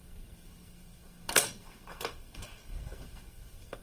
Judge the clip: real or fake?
fake